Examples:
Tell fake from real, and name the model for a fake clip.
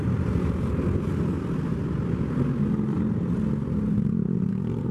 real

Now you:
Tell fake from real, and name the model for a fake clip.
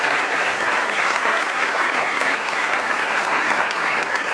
fake, codec, SNAC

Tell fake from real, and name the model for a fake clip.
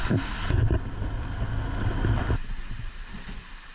real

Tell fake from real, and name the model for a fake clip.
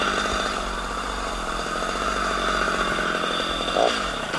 real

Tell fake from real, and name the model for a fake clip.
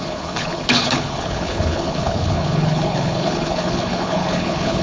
fake, codec, HILCodec